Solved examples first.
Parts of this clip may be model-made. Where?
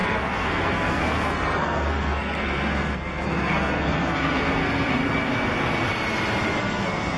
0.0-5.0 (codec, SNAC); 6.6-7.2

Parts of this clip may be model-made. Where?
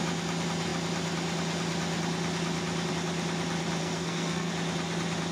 3.8-4.5 (codec, SNAC)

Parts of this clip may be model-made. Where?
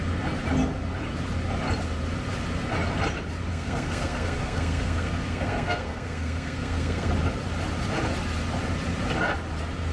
3.5-7.1 (codec, SNAC)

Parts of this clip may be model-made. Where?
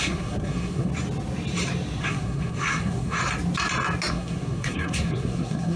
0.0-0.9 (codec, SNAC); 2.0-3.2; 4.1-5.8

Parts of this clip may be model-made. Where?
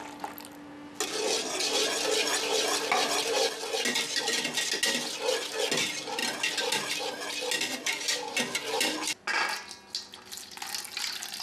none